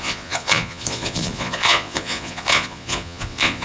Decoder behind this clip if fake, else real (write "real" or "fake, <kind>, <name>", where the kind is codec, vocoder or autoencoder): fake, vocoder, Vocos